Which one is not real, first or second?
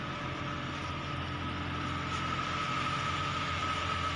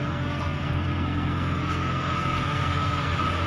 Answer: second